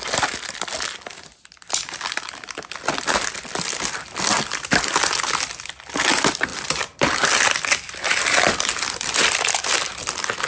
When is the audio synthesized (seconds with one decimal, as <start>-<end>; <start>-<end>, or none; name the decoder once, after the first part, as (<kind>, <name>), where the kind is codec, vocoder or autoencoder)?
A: 6.5-7.0 (vocoder, BigVGAN v2); 9.2-9.8